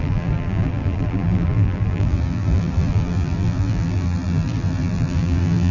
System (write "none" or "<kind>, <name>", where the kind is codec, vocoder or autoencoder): vocoder, BigVGAN v2